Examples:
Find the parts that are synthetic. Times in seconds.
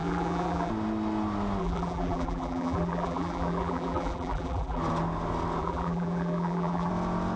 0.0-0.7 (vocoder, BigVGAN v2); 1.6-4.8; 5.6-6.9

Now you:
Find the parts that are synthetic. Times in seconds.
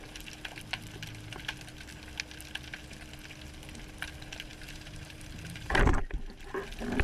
4.5-6.0 (vocoder, BigVGAN v2)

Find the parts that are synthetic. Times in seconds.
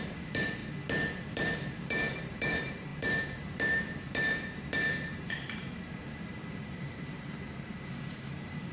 0.0-0.6 (vocoder, BigVGAN v2); 1.3-8.7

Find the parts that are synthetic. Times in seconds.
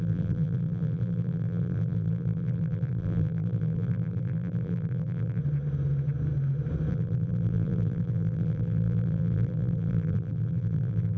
0.0-5.4 (vocoder, BigVGAN v2); 6.9-11.2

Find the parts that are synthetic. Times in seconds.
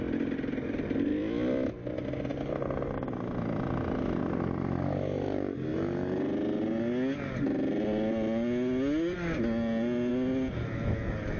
1.1-1.7 (vocoder, BigVGAN v2)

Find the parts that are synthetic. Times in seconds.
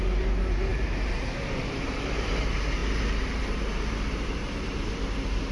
0.0-5.5 (vocoder, BigVGAN v2)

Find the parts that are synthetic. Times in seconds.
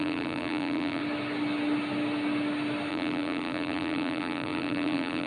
0.0-1.0 (vocoder, BigVGAN v2); 2.9-5.3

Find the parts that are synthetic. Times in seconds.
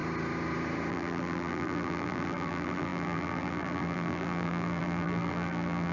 0.9-5.9 (vocoder, BigVGAN v2)